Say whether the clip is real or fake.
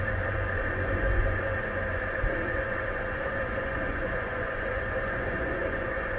fake